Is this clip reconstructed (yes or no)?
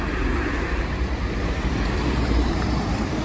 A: yes